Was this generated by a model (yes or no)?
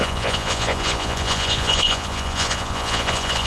yes